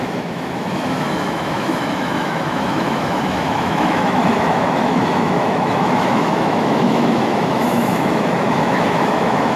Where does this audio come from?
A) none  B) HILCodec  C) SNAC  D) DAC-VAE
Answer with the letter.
D